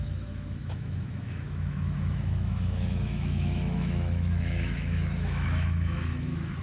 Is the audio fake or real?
fake